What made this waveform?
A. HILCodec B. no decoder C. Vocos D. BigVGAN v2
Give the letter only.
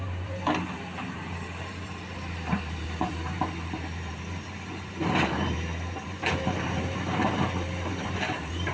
D